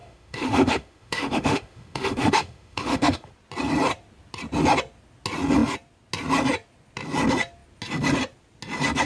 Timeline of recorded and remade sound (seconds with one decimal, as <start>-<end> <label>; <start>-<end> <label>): 0.0-3.3 remade; 3.3-9.1 recorded